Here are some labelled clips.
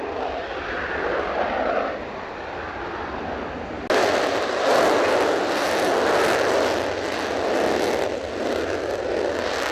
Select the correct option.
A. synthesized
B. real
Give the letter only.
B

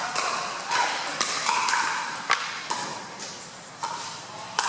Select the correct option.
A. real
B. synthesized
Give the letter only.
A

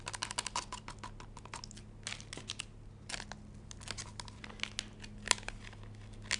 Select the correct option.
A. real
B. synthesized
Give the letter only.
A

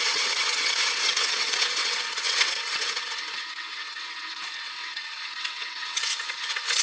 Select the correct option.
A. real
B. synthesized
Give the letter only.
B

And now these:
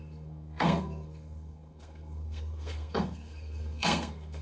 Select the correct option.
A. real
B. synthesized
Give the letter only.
B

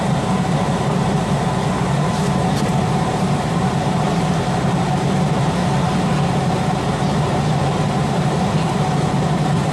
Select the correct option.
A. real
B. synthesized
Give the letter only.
B